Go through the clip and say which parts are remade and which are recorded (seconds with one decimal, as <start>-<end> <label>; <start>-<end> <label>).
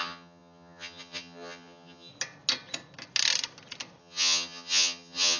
0.0-2.1 remade; 2.1-4.0 recorded; 4.0-5.4 remade